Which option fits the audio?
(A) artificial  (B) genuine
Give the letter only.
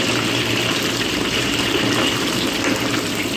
A